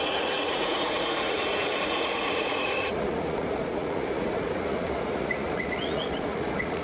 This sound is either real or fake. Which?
fake